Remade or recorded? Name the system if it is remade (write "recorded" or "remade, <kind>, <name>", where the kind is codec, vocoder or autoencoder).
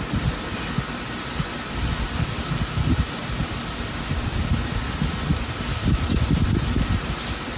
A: recorded